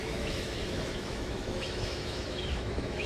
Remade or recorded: remade